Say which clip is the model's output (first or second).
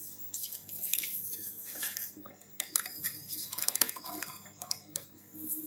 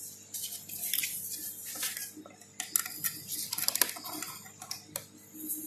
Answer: first